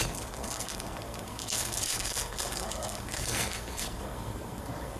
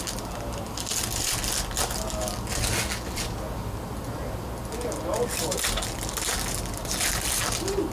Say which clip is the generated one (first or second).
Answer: first